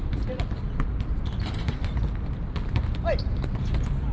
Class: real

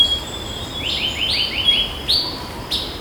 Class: real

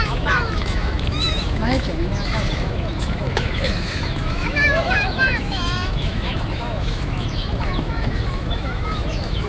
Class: fake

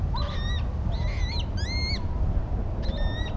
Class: real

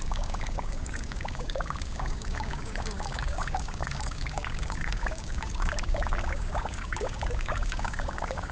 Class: fake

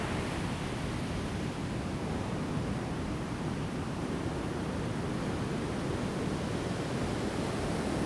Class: real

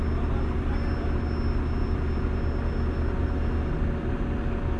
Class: real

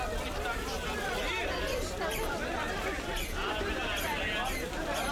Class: fake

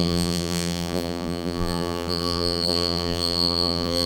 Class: fake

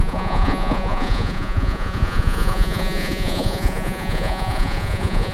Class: fake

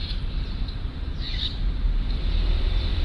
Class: fake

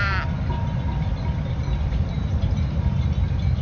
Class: fake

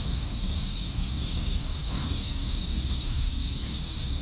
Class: fake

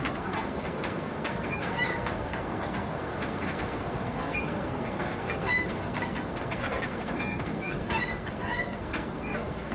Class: fake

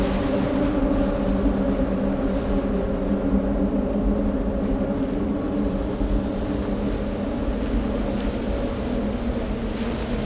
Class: real